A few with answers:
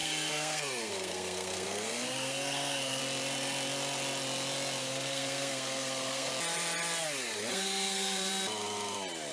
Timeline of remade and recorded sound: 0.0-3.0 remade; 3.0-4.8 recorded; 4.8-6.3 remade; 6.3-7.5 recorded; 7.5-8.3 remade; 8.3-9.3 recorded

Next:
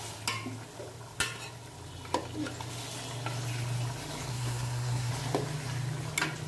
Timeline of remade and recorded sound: 0.0-4.3 recorded; 4.3-5.1 remade; 5.1-6.5 recorded

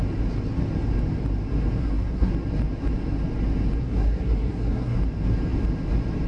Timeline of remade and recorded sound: 0.0-1.8 recorded; 1.8-2.3 remade; 2.3-3.8 recorded; 3.8-5.0 remade; 5.0-6.3 recorded

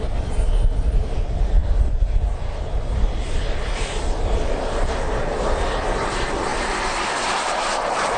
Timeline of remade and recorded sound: 0.0-8.2 recorded

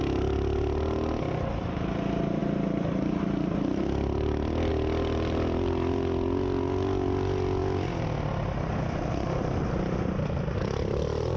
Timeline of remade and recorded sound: 0.0-11.4 recorded

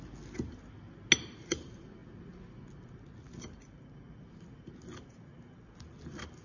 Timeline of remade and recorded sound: 0.0-6.4 recorded